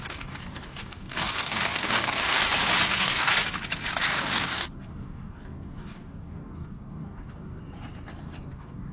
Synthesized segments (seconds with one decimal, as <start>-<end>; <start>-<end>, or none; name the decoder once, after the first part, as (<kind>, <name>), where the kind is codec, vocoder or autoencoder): 0.0-2.4 (codec, DAC); 2.9-3.3; 4.1-7.6; 8.2-8.9